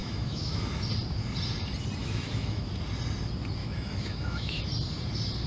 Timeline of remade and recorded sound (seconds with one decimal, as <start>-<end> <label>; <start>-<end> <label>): 0.0-0.8 remade; 0.8-2.0 recorded; 2.0-2.7 remade; 2.7-3.6 recorded; 3.6-4.6 remade; 4.6-5.5 recorded

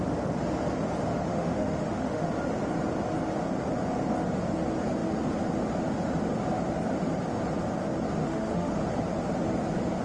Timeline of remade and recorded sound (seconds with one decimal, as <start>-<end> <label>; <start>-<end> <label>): 0.0-1.3 recorded; 1.3-2.3 remade; 2.3-8.2 recorded; 8.2-8.8 remade; 8.8-10.0 recorded